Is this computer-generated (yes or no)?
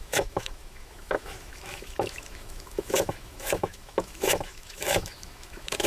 yes